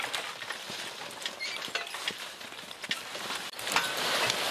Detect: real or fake real